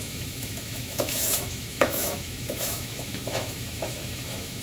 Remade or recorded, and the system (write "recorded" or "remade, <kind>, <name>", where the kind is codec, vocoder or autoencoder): remade, autoencoder, DAC-VAE